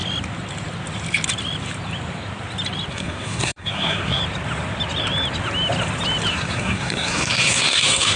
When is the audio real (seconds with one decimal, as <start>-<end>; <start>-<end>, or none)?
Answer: 0.0-2.9; 4.2-6.3